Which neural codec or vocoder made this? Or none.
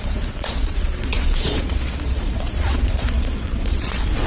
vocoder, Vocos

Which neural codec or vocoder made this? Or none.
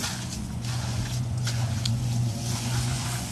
vocoder, Vocos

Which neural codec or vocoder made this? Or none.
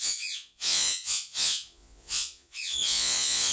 vocoder, Vocos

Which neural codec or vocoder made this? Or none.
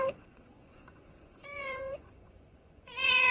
vocoder, Vocos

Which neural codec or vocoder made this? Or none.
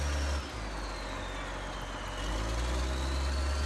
none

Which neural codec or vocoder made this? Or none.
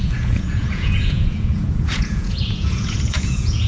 vocoder, Vocos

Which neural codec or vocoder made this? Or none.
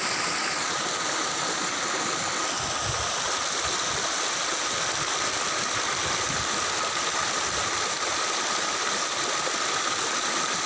none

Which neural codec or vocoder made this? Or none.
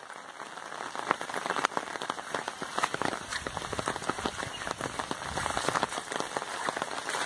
none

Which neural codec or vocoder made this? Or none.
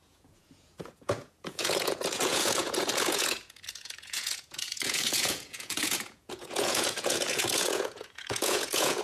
vocoder, Vocos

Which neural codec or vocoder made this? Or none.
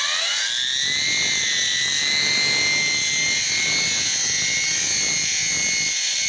none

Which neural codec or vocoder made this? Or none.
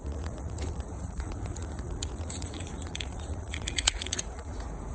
vocoder, Vocos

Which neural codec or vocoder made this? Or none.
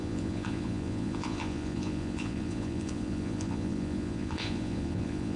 vocoder, Vocos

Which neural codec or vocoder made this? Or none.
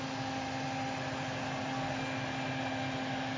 none